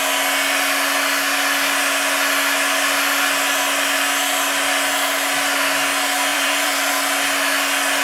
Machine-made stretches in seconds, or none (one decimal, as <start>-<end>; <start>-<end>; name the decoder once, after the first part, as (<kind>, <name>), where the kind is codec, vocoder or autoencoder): 6.3-6.9 (vocoder, BigVGAN v2)